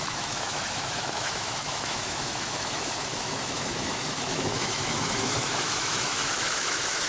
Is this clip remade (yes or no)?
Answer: yes